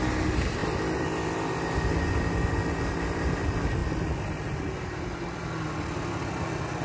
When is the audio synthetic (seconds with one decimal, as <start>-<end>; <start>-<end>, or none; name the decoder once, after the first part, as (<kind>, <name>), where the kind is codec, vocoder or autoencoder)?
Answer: none